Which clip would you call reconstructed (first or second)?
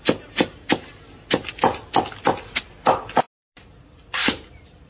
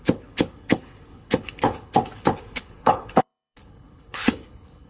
second